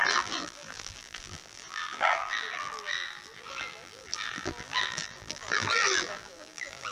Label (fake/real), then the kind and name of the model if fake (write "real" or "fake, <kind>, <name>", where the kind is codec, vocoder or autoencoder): fake, vocoder, BigVGAN v2